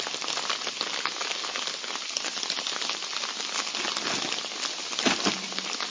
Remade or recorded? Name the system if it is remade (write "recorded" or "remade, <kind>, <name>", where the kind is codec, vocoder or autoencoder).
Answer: recorded